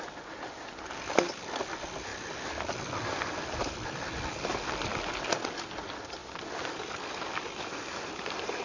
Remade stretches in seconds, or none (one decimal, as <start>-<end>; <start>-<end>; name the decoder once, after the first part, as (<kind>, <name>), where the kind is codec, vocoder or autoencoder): 6.2-7.1 (vocoder, BigVGAN v2)